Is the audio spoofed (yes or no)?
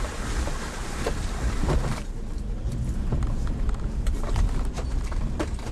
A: yes